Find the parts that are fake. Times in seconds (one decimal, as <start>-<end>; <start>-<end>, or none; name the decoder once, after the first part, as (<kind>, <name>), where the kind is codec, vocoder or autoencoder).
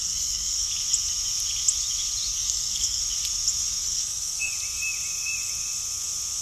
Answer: 0.0-0.7 (codec, SNAC); 2.3-3.0; 3.8-4.5